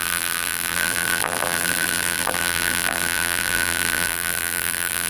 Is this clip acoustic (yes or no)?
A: no